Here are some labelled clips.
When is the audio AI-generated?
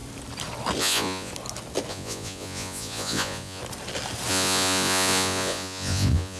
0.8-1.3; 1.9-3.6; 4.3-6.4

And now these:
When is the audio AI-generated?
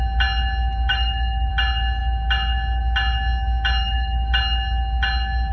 0.9-1.5; 3.8-4.3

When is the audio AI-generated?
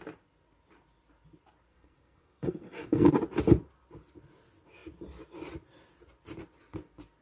1.7-3.1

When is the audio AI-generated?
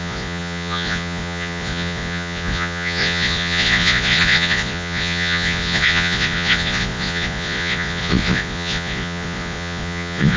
0.0-10.4